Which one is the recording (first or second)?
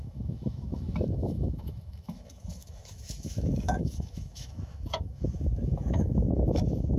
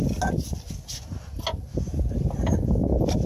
second